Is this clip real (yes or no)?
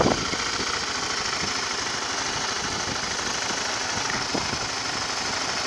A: yes